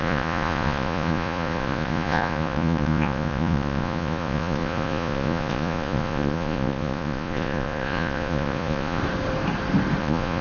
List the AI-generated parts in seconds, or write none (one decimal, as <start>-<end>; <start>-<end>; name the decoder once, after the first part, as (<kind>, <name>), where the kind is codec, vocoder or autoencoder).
0.0-9.0 (vocoder, Vocos); 10.0-10.4